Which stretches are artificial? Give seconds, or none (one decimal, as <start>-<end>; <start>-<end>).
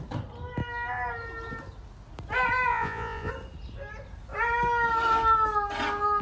2.7-3.3